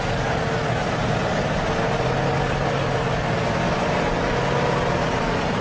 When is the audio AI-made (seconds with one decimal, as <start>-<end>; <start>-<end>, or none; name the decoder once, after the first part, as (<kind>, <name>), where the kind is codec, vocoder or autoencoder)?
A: none